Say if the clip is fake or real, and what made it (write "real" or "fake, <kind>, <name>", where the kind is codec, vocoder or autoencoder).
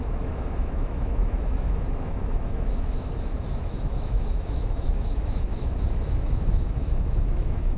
fake, autoencoder, DAC-VAE